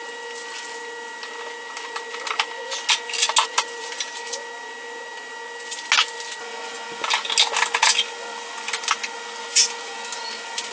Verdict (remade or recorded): recorded